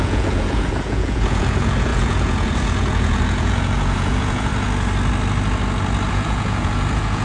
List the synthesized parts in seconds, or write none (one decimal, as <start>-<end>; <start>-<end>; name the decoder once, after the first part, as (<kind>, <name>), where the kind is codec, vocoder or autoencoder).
0.0-4.5 (vocoder, Vocos); 6.1-7.2